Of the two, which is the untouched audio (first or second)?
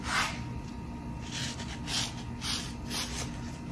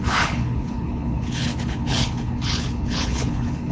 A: first